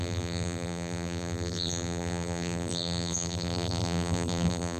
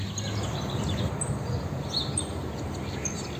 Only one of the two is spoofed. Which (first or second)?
first